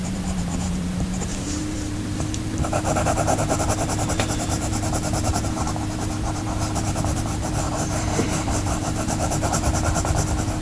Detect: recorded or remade remade